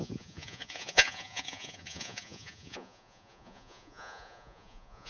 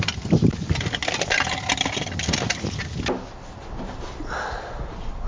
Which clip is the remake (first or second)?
first